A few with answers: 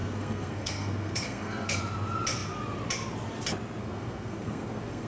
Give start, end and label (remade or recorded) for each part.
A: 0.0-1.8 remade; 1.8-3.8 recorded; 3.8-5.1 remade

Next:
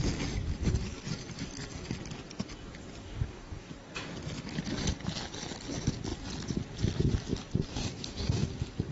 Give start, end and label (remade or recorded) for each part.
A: 0.0-3.0 recorded; 3.0-3.7 remade; 3.7-7.7 recorded; 7.7-8.5 remade; 8.5-8.9 recorded

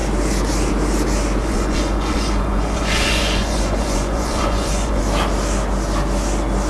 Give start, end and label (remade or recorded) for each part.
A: 0.0-1.4 recorded; 1.4-5.0 remade; 5.0-6.7 recorded

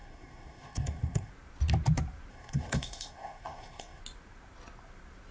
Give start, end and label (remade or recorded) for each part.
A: 0.0-1.3 remade; 1.3-2.3 recorded; 2.3-4.0 remade; 4.0-5.3 recorded